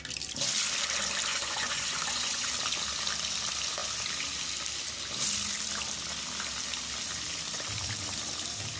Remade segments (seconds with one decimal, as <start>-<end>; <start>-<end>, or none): 1.3-2.5